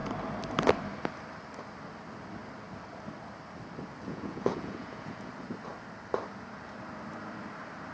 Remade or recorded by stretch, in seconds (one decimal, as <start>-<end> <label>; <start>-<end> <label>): 0.0-4.0 recorded; 4.0-5.3 remade; 5.3-7.9 recorded